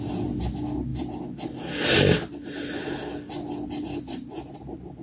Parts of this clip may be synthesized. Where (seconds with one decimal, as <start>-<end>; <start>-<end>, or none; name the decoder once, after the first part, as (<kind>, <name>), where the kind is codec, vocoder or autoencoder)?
none